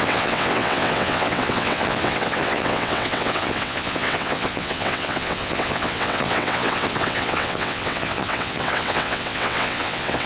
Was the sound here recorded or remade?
remade